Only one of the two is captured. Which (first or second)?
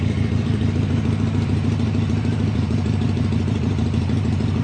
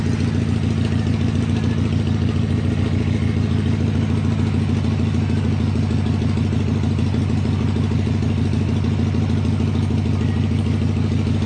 second